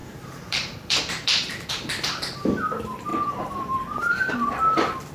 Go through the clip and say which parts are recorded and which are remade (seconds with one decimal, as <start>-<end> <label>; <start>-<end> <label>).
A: 0.0-1.7 remade; 1.7-3.1 recorded; 3.1-4.3 remade; 4.3-5.1 recorded